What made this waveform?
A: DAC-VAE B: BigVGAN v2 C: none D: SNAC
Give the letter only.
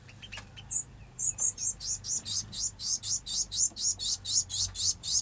B